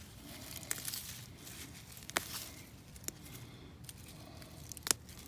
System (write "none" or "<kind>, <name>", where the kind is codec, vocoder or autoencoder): none